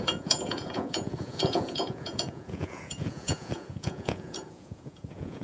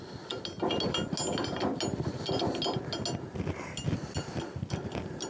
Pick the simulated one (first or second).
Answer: first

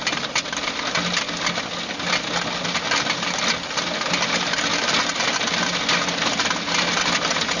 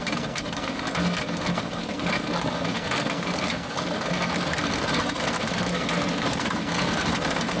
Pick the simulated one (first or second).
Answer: second